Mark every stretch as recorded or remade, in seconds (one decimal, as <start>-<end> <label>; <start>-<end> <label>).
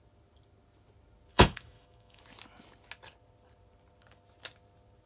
0.0-1.3 recorded; 1.3-2.2 remade; 2.2-5.1 recorded